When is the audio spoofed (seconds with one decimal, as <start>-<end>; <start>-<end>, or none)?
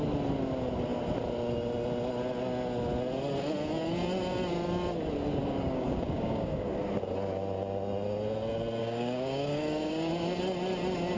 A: 5.4-6.8; 8.8-10.1